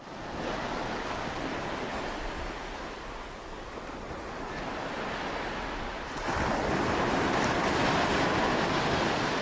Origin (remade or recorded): recorded